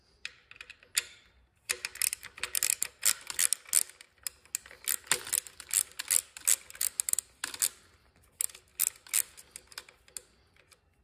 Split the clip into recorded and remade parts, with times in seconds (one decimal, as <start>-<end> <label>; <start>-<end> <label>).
0.0-11.0 recorded